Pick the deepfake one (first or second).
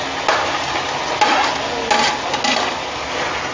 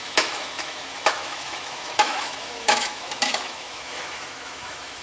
second